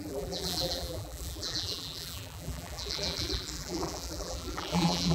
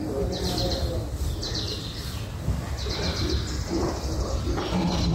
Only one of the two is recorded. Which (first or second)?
second